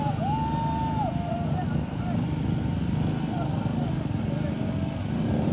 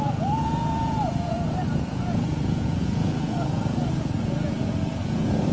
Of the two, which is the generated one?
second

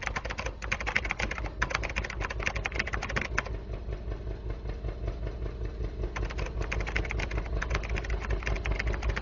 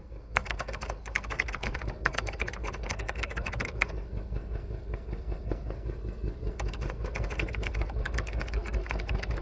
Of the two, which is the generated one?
second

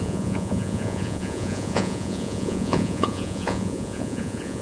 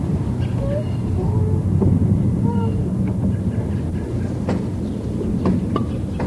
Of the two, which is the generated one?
first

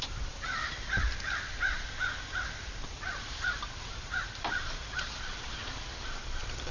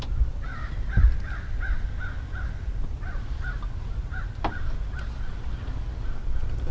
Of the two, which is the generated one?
first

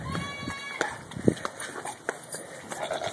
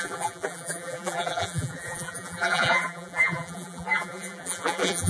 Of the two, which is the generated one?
second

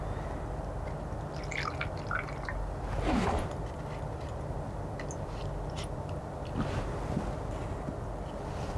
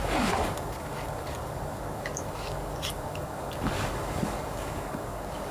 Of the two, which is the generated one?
second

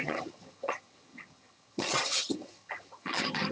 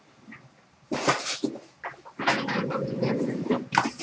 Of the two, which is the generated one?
first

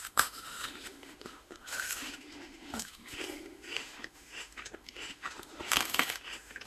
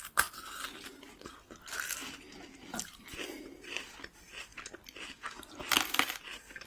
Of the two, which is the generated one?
first